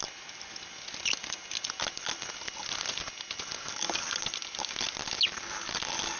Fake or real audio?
real